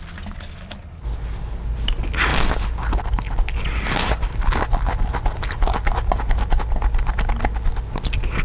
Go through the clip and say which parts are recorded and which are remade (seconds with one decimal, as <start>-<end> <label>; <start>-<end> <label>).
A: 0.0-8.4 recorded